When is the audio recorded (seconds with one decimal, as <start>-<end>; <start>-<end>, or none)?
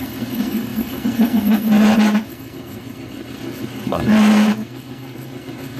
none